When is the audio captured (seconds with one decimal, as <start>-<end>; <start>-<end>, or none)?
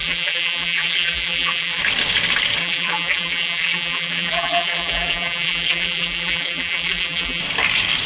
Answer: 1.8-2.6; 7.4-8.1